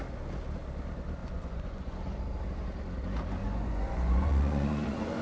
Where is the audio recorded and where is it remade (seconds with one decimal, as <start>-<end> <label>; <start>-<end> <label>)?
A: 0.0-1.2 recorded; 1.2-2.2 remade; 2.2-3.4 recorded; 3.4-5.2 remade